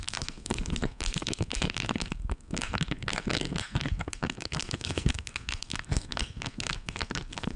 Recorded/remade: remade